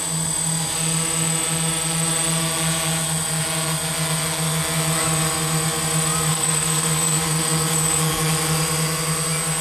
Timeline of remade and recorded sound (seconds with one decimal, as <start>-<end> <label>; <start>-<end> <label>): 0.0-6.3 recorded; 6.3-8.3 remade; 8.3-9.6 recorded